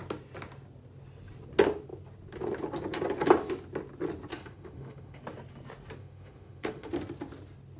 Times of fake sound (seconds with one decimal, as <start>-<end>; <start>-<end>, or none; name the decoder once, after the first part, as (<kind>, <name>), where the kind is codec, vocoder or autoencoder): 4.3-5.2 (autoencoder, DAC-VAE); 6.0-6.9